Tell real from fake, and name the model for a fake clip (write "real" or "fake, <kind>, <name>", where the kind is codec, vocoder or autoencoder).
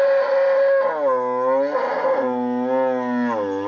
real